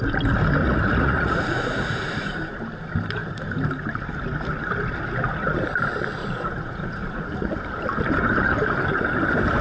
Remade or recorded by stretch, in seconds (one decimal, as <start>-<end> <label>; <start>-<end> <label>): 0.0-0.6 recorded; 0.6-2.1 remade; 2.1-6.2 recorded; 6.2-7.2 remade; 7.2-9.6 recorded

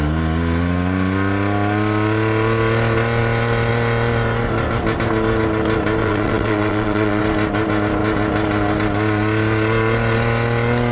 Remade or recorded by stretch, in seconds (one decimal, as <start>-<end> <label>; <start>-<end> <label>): 0.0-6.0 recorded; 6.0-7.2 remade; 7.2-10.9 recorded

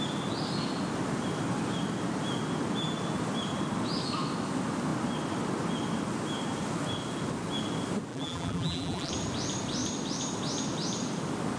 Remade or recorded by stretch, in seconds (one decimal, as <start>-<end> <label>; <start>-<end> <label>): 0.0-8.1 recorded; 8.1-9.1 remade; 9.1-11.6 recorded

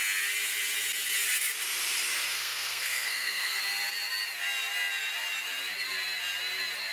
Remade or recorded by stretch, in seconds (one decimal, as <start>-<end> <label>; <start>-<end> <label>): 0.0-2.3 recorded; 2.3-3.6 remade; 3.6-6.9 recorded

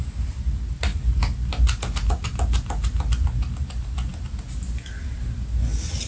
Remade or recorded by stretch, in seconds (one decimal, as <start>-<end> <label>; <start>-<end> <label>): 0.0-6.1 recorded

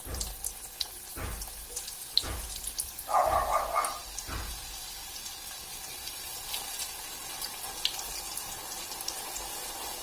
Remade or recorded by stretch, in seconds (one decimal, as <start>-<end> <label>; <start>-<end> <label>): 0.0-10.0 recorded